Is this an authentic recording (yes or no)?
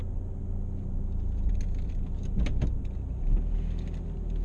yes